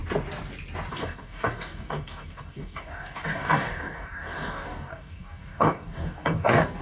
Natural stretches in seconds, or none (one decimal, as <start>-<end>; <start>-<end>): 0.0-0.9